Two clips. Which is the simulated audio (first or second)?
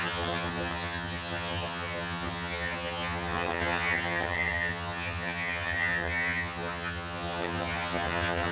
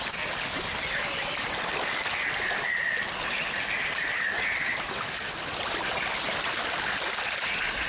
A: first